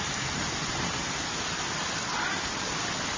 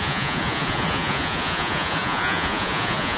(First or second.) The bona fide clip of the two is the first